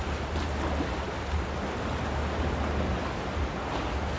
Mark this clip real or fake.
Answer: real